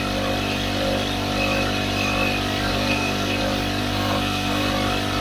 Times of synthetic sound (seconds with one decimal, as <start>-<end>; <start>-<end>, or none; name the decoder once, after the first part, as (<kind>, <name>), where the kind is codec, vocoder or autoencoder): 2.7-3.4 (codec, SNAC); 3.8-4.7